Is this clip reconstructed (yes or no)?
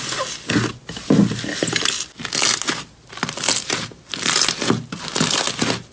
no